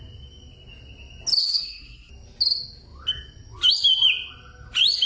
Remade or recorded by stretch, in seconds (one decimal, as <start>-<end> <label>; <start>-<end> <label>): 0.0-1.4 recorded; 1.4-2.1 remade; 2.1-5.1 recorded